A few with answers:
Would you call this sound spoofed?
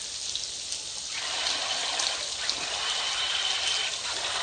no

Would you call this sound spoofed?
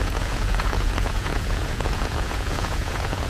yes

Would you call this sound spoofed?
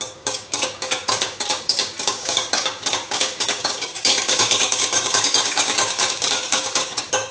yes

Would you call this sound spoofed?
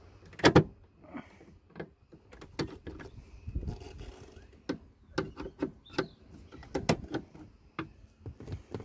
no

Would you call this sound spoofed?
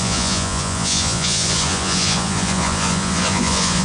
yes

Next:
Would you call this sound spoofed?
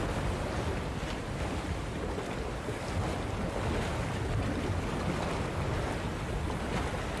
no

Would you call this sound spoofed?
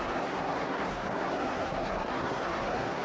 yes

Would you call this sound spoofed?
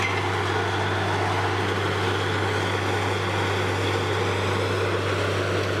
no